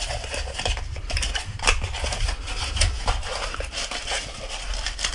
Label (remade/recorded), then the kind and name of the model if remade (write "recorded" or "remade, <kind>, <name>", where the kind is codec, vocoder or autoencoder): recorded